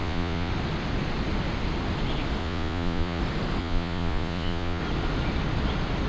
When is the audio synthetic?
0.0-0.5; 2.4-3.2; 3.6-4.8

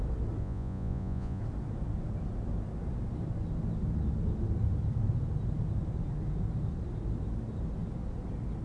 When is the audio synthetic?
0.4-1.4